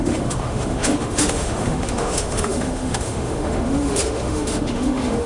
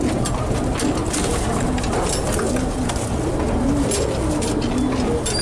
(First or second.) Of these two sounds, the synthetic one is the first